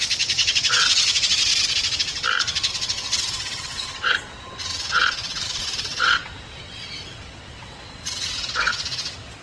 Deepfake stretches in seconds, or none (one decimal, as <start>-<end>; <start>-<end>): 0.0-1.5; 2.7-9.4